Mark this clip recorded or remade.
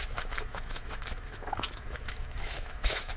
remade